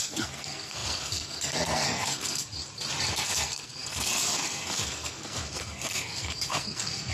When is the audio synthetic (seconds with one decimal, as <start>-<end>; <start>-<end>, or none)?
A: 0.0-2.5; 3.1-7.1